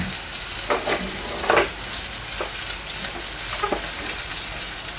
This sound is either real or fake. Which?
real